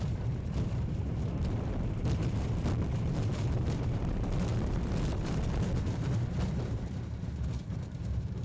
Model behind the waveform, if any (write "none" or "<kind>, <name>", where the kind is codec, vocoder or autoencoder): vocoder, BigVGAN v2